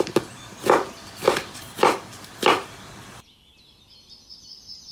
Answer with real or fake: real